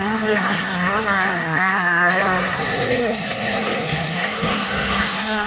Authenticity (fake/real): fake